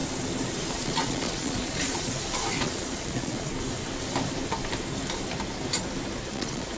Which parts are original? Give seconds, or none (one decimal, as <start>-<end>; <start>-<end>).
0.0-0.7; 2.1-2.6; 3.5-6.3